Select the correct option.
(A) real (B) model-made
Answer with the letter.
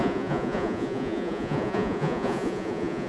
B